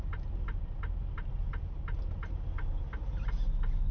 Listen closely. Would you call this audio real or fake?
real